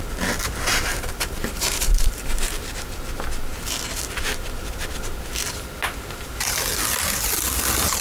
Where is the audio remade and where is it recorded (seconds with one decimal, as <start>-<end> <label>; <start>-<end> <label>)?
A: 0.0-0.9 recorded; 0.9-2.6 remade; 2.6-8.0 recorded